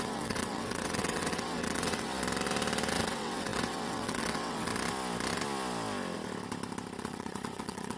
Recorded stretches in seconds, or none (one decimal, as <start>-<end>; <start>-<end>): 2.1-2.9; 4.7-7.0